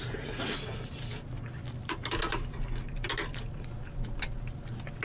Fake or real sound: real